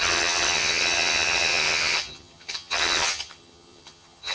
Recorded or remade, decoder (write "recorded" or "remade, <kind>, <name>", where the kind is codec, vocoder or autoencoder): remade, vocoder, HiFi-GAN